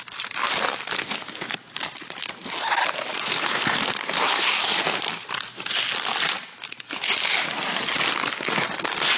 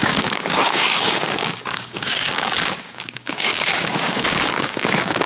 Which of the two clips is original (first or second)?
first